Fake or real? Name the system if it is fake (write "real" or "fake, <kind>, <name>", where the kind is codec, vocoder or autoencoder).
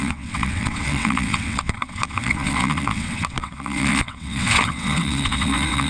fake, vocoder, WaveNeXt